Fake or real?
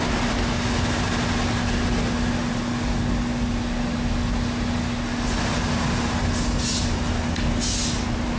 real